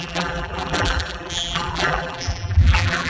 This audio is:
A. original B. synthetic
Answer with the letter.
B